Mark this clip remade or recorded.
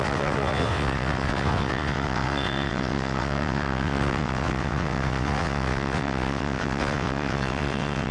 remade